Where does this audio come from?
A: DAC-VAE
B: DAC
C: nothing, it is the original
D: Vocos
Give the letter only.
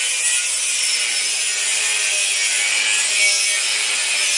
C